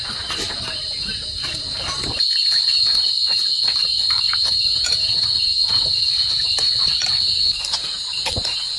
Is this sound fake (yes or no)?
yes